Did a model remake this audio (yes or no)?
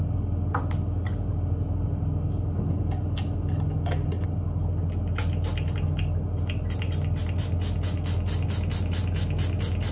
no